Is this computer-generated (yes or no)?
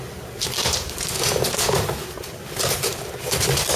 no